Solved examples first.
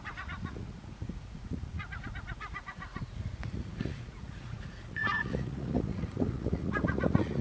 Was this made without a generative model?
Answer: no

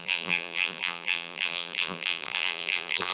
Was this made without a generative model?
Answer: no